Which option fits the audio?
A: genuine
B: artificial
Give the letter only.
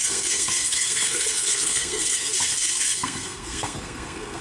B